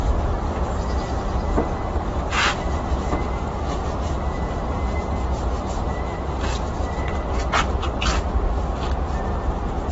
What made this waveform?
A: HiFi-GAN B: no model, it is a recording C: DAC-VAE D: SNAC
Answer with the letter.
B